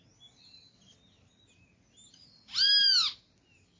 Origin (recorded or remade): recorded